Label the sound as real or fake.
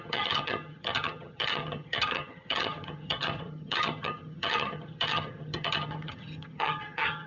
fake